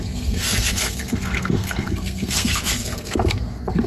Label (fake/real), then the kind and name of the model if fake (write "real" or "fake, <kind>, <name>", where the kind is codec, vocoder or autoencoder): fake, codec, SNAC